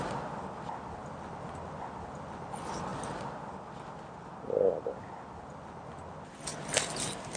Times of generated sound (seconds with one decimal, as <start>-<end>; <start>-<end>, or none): 6.5-7.4